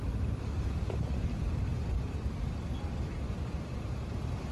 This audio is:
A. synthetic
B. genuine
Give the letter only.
B